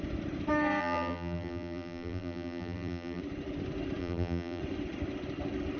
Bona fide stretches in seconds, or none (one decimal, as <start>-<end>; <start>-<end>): 0.0-0.8; 3.2-4.0; 4.6-5.8